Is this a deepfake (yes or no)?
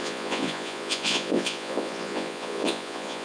yes